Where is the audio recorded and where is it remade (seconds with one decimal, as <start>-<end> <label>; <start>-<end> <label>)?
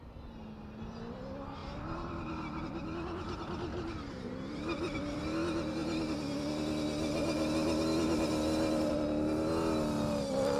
0.0-1.6 recorded; 1.6-2.6 remade; 2.6-3.7 recorded; 3.7-5.2 remade; 5.2-10.6 recorded